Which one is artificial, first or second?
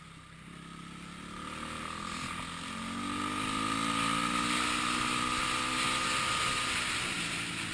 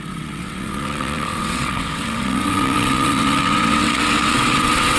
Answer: second